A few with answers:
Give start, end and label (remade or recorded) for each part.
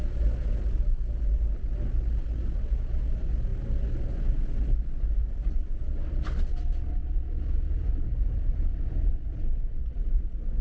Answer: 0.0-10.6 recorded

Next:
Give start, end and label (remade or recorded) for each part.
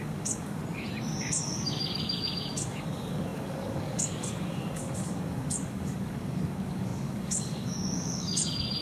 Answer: 0.0-0.6 remade; 0.6-1.2 recorded; 1.2-8.8 remade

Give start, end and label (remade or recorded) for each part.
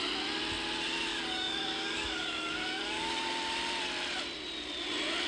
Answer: 0.0-1.1 recorded; 1.1-3.3 remade; 3.3-5.3 recorded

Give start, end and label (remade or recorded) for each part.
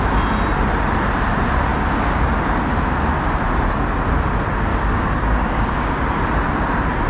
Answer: 0.0-4.7 recorded; 4.7-5.9 remade; 5.9-7.1 recorded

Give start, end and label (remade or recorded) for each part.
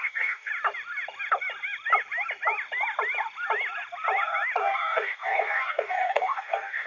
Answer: 0.0-0.5 remade; 0.5-4.6 recorded; 4.6-6.9 remade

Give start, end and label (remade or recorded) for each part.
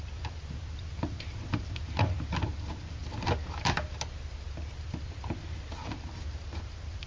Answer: 0.0-7.1 recorded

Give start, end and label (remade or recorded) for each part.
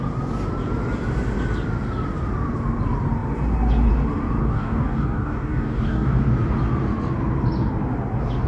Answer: 0.0-4.4 recorded; 4.4-6.2 remade; 6.2-8.5 recorded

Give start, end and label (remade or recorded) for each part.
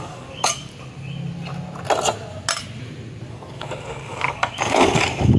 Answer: 0.0-0.7 remade; 0.7-3.3 recorded; 3.3-5.4 remade